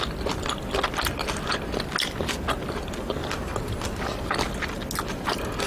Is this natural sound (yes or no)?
yes